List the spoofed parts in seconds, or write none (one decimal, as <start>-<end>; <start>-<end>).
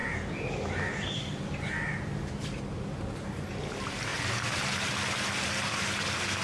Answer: 0.0-2.6